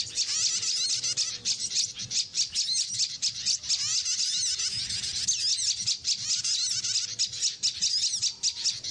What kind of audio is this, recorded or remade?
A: recorded